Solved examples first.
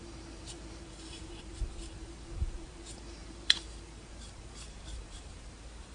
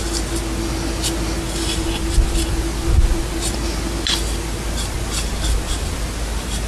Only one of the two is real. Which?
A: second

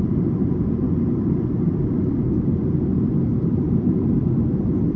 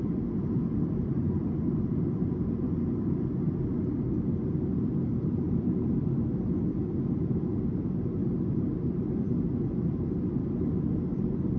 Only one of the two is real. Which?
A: second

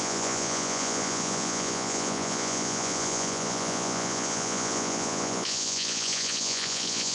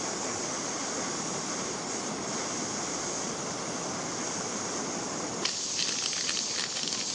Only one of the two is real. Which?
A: second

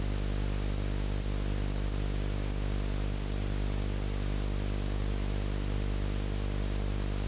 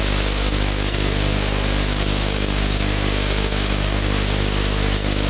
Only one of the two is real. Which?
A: first